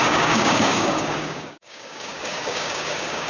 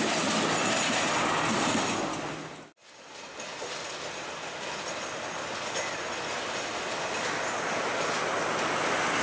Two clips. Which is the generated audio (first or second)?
first